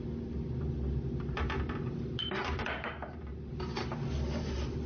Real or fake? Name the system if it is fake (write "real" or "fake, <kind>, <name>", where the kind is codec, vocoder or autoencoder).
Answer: real